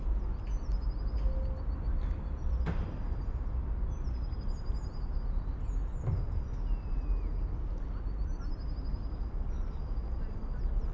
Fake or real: real